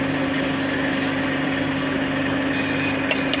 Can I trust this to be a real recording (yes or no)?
yes